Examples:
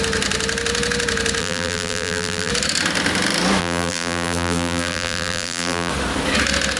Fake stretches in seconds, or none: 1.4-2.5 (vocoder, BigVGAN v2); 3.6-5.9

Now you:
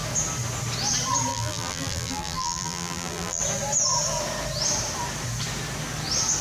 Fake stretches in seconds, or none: 1.3-3.4 (vocoder, BigVGAN v2)